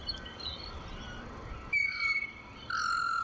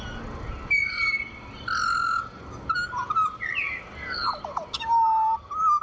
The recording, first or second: second